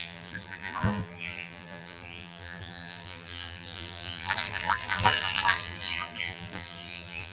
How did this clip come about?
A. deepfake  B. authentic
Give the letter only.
A